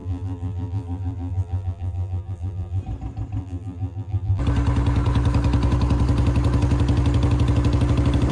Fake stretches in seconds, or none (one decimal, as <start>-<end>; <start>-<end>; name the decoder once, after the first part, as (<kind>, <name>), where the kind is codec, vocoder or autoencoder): 0.0-2.8 (vocoder, BigVGAN v2); 3.4-4.4